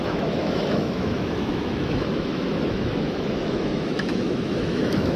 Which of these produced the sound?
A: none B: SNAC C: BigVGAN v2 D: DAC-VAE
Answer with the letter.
D